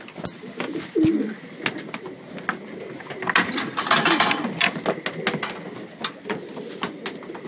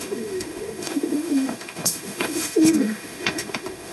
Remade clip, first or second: second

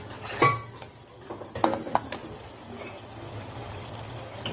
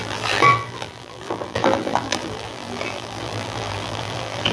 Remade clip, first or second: second